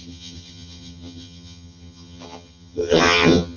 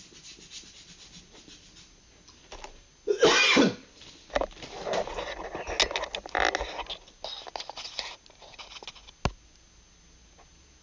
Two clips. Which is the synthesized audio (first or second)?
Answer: first